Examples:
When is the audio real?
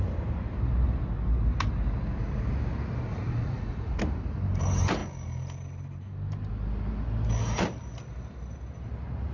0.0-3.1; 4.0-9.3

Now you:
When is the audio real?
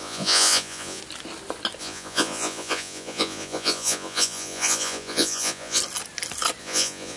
1.0-1.8; 5.8-6.6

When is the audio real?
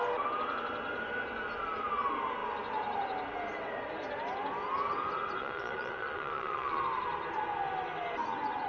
0.0-5.4; 6.8-8.7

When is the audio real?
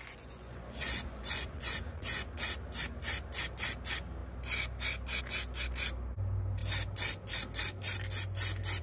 2.4-8.8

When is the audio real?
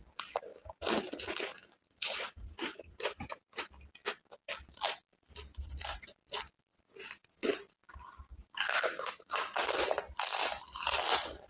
0.0-0.5; 3.7-6.7; 7.5-8.3; 9.8-11.5